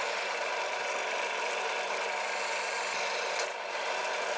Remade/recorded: recorded